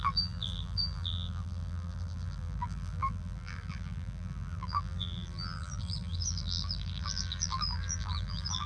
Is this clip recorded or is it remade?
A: remade